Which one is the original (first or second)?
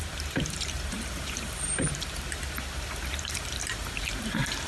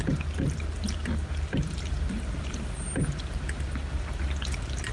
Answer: second